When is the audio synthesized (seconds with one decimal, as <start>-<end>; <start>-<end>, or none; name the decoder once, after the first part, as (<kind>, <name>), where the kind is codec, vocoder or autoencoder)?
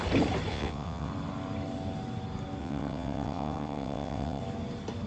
0.5-1.1 (vocoder, WaveNeXt); 2.6-4.4